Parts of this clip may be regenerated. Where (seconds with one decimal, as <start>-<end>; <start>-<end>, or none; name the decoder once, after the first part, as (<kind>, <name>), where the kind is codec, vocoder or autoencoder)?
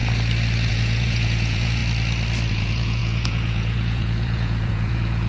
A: 0.7-1.8 (vocoder, Vocos); 2.5-5.3